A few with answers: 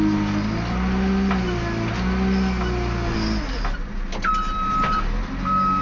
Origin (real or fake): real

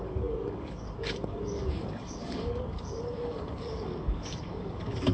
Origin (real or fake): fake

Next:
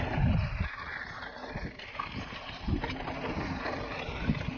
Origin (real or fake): real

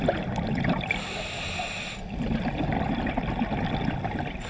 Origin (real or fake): real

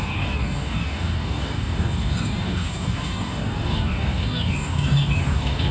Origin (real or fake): fake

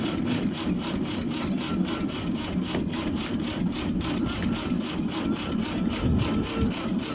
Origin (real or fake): real